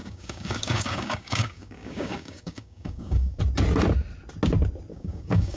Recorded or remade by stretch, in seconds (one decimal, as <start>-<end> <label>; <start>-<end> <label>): 0.0-3.4 remade; 3.4-4.9 recorded; 4.9-5.6 remade